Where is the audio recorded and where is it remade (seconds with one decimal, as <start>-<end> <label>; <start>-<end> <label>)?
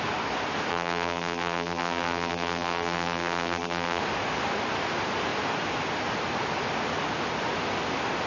0.0-0.7 recorded; 0.7-4.0 remade; 4.0-8.3 recorded